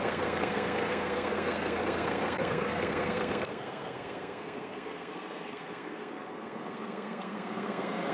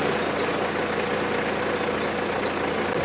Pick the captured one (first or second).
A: second